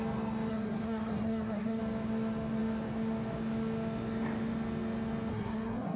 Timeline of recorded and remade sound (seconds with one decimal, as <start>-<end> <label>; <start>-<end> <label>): 0.0-0.5 recorded; 0.5-1.8 remade; 1.8-5.3 recorded; 5.3-6.0 remade